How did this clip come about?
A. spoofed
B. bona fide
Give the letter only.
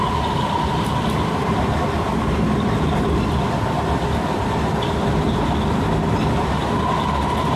B